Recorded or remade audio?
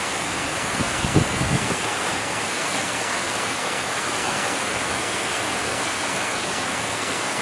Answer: remade